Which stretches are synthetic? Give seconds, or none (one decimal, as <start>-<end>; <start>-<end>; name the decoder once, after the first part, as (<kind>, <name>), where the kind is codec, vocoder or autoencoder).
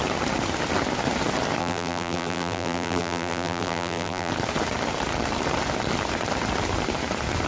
1.6-4.3 (vocoder, BigVGAN v2)